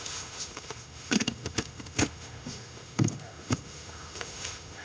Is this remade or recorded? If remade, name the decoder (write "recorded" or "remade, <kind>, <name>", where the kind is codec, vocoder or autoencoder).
remade, autoencoder, DAC-VAE